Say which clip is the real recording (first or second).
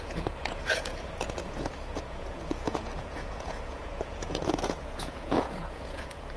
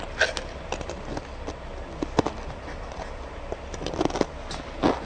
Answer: second